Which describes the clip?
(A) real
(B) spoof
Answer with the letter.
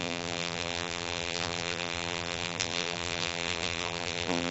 B